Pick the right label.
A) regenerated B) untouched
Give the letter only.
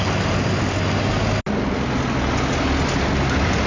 B